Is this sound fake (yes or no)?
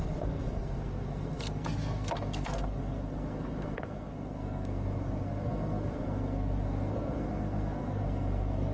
yes